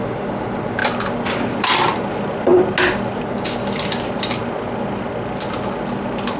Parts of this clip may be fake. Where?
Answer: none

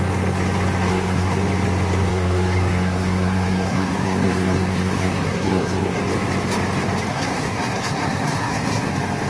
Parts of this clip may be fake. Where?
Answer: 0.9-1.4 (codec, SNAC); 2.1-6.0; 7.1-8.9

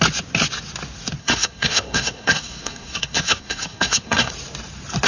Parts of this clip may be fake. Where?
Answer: 1.2-4.3 (codec, SNAC)

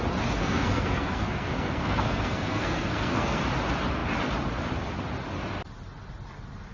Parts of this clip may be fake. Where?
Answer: 0.4-3.4 (codec, SNAC)

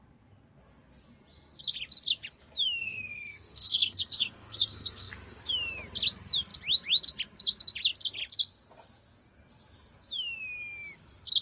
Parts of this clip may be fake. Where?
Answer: 2.8-5.5 (codec, SNAC)